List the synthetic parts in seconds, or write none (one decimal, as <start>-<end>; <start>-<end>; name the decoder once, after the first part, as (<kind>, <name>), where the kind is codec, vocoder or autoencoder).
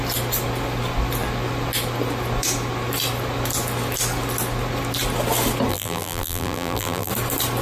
5.7-7.1 (vocoder, BigVGAN v2)